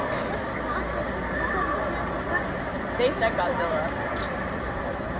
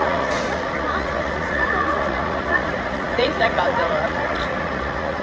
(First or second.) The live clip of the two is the first